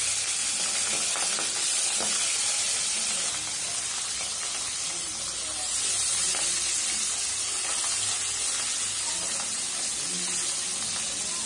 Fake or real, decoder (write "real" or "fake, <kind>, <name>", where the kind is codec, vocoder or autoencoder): real